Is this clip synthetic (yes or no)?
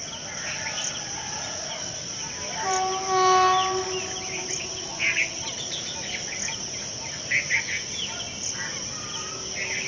no